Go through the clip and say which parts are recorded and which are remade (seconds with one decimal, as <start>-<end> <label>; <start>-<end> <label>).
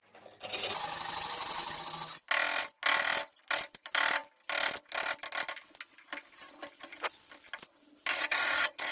0.0-8.1 recorded; 8.1-8.9 remade